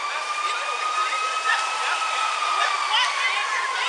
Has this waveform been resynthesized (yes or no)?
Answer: no